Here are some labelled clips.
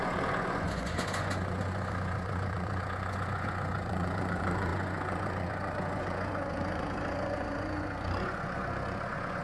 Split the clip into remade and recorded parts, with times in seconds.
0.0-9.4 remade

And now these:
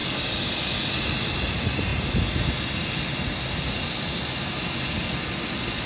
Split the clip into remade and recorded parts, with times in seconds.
0.0-5.9 recorded

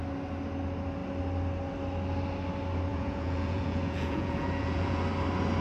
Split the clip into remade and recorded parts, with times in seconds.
0.0-2.9 recorded; 2.9-5.0 remade; 5.0-5.6 recorded